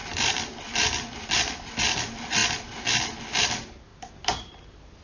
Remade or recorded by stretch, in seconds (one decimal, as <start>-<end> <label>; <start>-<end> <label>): 0.0-1.7 remade; 1.7-2.4 recorded; 2.4-3.0 remade; 3.0-5.0 recorded